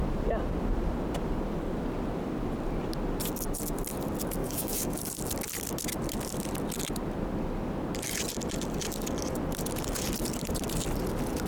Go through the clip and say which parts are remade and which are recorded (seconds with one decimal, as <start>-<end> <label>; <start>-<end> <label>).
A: 0.0-4.4 recorded; 4.4-5.0 remade; 5.0-11.5 recorded